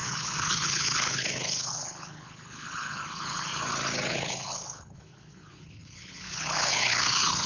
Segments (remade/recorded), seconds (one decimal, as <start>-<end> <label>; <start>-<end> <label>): 0.0-3.5 remade; 3.5-4.1 recorded; 4.1-7.5 remade